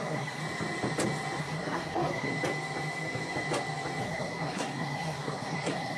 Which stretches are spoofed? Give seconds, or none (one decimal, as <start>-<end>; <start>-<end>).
0.0-0.4; 1.4-2.3; 4.0-6.0

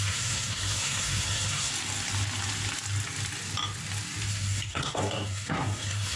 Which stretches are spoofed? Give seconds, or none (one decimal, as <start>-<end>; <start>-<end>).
0.0-1.7; 4.3-6.2

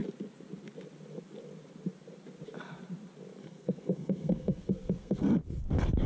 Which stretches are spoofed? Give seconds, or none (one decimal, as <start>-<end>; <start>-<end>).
3.4-5.4